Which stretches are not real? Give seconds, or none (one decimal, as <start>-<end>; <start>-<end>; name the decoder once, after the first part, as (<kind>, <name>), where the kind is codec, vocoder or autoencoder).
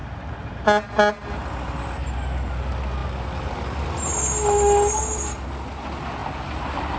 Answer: none